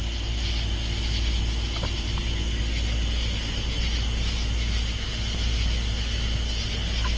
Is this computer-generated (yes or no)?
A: no